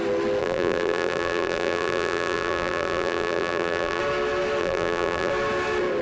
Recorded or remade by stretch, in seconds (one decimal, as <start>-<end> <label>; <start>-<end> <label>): 0.0-0.4 recorded; 0.4-4.0 remade; 4.0-4.6 recorded; 4.6-5.3 remade; 5.3-6.0 recorded